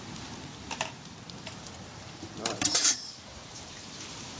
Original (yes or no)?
no